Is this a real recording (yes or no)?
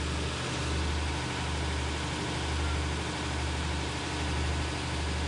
yes